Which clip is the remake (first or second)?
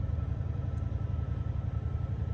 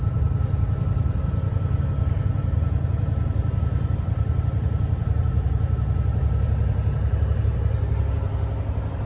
second